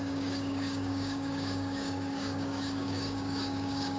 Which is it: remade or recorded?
remade